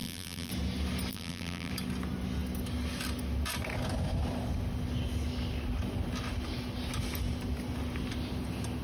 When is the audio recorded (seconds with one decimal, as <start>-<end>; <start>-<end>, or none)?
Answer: 0.5-1.1; 1.7-8.8